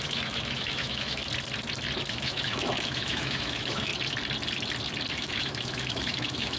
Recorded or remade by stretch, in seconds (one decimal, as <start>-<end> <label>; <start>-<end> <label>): 0.0-1.2 remade; 1.2-2.1 recorded; 2.1-3.9 remade; 3.9-5.1 recorded; 5.1-6.6 remade